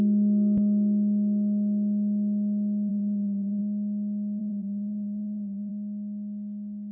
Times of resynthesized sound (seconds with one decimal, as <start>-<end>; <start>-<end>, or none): 2.9-3.6; 4.4-5.7

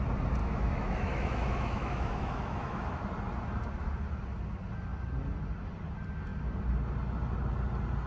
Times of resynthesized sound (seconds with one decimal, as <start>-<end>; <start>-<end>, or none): 0.4-3.0

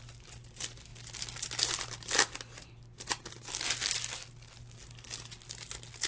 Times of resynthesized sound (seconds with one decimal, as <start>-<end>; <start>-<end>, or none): none

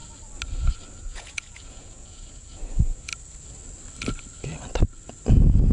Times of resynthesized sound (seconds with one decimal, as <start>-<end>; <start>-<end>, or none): 1.0-3.1; 5.3-5.7

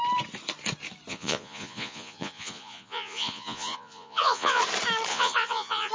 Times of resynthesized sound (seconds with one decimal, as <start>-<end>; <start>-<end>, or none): 1.1-4.6; 5.1-5.9

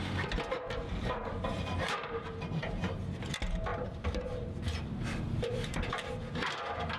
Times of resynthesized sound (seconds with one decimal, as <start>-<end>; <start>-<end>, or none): 0.9-2.7; 3.7-5.9

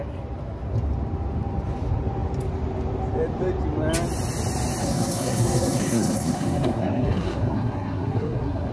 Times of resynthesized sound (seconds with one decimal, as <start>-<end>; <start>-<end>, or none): 4.8-8.7

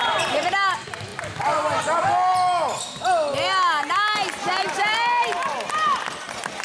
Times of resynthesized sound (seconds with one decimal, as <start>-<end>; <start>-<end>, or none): none